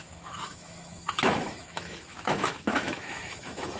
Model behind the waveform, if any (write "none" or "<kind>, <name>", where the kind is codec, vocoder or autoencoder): autoencoder, DAC-VAE